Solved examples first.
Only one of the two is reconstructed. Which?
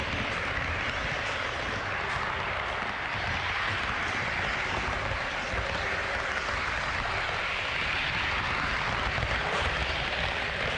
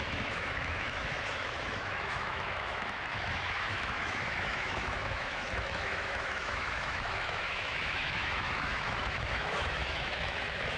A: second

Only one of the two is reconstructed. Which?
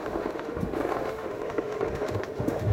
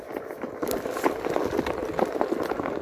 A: first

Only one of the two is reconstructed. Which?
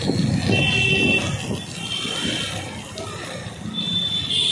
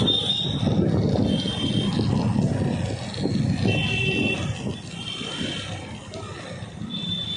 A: second